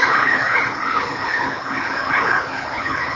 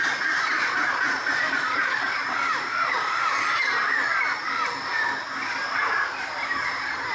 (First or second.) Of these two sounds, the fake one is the first